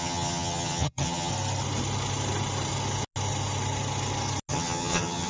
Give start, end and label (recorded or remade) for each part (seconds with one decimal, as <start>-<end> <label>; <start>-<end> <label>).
0.0-1.3 remade; 1.3-4.5 recorded; 4.5-5.3 remade